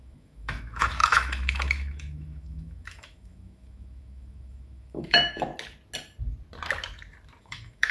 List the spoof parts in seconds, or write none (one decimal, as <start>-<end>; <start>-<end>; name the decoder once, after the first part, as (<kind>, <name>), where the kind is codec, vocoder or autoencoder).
0.0-5.5 (autoencoder, DAC-VAE); 7.4-7.9

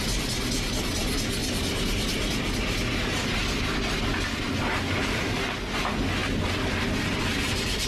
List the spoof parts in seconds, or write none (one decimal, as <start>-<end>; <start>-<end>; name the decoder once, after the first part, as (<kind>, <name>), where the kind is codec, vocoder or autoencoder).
none

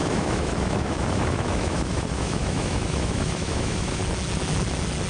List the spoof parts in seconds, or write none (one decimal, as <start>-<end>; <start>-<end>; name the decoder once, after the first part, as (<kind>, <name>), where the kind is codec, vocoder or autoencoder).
0.0-4.0 (autoencoder, DAC-VAE)

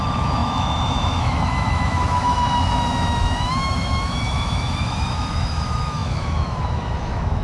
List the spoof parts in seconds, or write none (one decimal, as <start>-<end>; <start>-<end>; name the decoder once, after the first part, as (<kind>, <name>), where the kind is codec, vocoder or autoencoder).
0.0-7.4 (autoencoder, DAC-VAE)

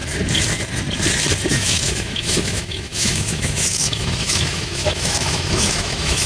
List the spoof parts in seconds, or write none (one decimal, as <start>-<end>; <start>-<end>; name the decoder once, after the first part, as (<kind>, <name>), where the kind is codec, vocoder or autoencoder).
1.5-6.3 (autoencoder, DAC-VAE)

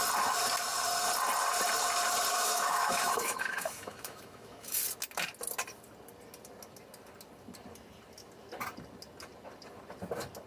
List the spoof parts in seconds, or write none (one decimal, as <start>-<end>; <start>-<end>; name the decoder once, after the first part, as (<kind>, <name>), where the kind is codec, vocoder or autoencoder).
2.3-4.8 (autoencoder, DAC-VAE)

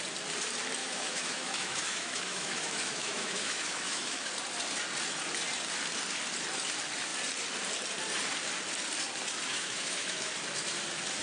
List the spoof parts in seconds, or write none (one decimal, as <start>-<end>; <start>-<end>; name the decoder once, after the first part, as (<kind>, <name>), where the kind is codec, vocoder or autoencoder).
0.8-4.3 (autoencoder, DAC-VAE); 9.5-10.3

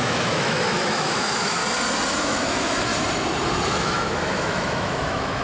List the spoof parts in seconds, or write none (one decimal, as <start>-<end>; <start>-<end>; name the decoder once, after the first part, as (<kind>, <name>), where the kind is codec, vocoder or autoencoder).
0.0-1.6 (autoencoder, DAC-VAE); 2.2-2.9; 3.7-5.4